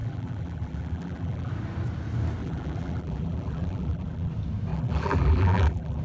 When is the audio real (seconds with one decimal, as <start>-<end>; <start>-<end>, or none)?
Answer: 1.5-2.4; 4.3-4.7